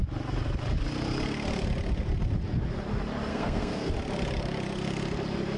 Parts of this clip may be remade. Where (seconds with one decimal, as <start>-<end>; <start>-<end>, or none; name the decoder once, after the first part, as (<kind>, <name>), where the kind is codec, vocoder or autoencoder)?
3.3-3.9 (codec, SNAC)